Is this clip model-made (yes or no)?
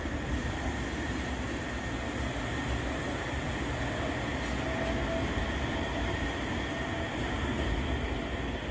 no